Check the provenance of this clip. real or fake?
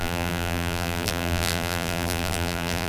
fake